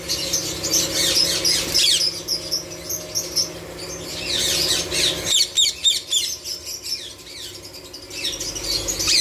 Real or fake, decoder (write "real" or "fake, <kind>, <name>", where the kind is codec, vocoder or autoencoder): real